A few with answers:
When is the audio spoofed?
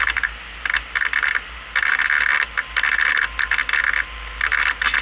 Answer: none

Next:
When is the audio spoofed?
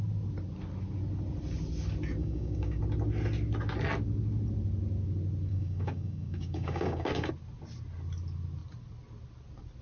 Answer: 2.2-2.8; 5.5-7.3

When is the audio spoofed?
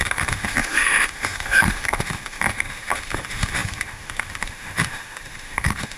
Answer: 0.0-6.0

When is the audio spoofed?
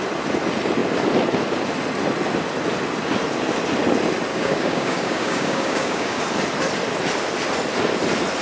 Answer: 4.3-6.2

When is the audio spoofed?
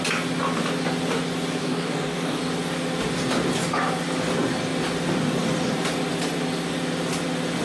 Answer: 1.6-2.4